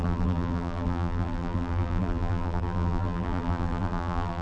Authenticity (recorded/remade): remade